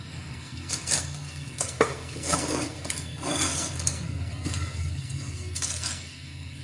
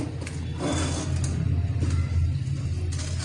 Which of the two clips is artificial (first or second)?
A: first